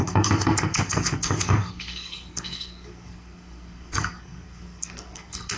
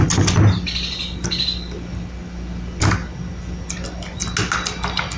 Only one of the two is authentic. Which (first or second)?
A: second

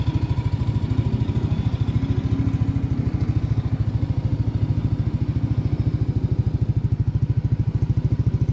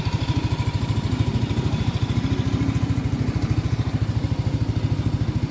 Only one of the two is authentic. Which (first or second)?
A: first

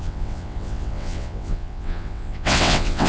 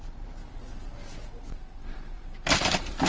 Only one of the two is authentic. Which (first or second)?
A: second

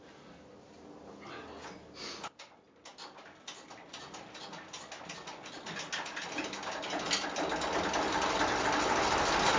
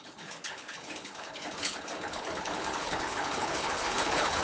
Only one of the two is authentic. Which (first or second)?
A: first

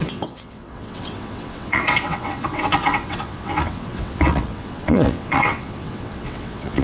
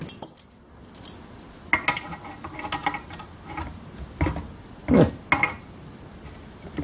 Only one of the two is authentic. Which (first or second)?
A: second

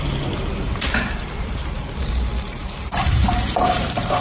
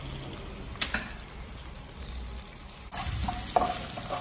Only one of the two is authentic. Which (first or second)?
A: second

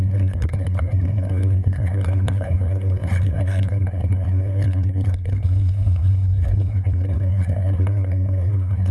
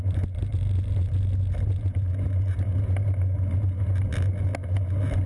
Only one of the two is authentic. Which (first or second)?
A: second